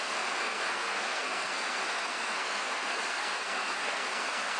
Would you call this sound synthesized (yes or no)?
yes